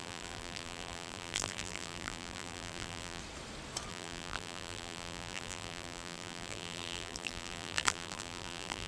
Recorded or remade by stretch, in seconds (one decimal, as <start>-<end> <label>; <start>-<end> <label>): 0.0-3.2 remade; 3.2-3.9 recorded; 3.9-8.9 remade